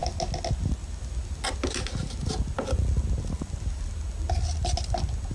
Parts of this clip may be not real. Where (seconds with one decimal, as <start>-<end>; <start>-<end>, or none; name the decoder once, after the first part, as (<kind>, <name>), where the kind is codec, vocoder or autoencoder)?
none

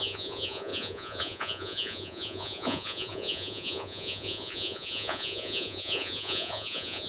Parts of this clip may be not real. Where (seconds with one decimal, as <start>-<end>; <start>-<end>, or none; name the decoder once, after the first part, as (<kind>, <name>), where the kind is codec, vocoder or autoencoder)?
0.0-7.1 (vocoder, Vocos)